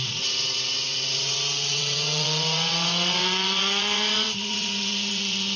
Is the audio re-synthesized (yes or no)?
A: yes